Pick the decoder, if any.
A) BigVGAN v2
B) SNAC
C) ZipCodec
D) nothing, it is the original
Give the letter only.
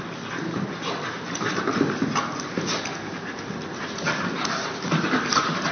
D